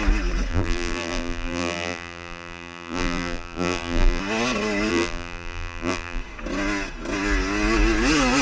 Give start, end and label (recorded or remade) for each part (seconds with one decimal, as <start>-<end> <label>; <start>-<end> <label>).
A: 0.0-0.5 recorded; 0.5-4.2 remade; 4.2-4.9 recorded; 4.9-6.2 remade; 6.2-8.4 recorded